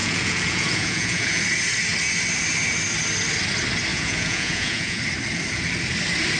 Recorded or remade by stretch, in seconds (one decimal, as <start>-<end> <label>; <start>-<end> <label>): 0.0-1.4 remade; 1.4-3.9 recorded; 3.9-5.0 remade; 5.0-6.4 recorded